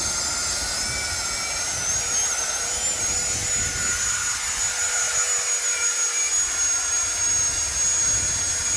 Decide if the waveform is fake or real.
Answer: real